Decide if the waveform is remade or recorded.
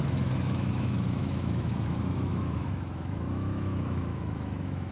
remade